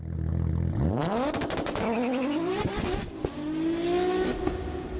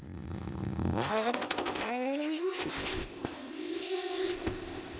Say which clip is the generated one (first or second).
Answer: second